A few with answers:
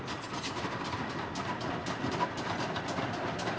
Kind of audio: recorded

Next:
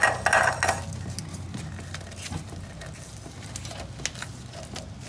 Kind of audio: recorded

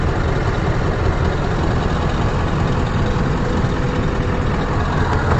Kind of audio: recorded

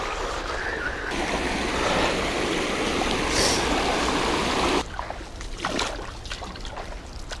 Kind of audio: recorded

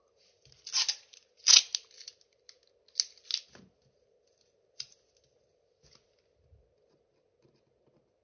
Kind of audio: recorded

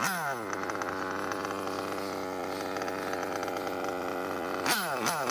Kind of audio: recorded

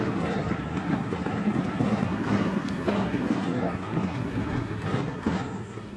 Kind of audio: remade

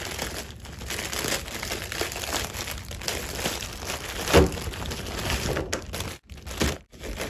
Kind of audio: recorded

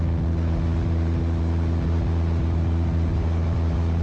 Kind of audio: recorded